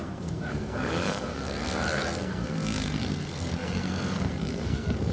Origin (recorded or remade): remade